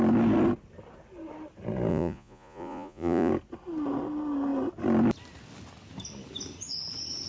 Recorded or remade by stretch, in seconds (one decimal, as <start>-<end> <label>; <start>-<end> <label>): 0.0-1.9 recorded; 1.9-3.3 remade; 3.3-7.3 recorded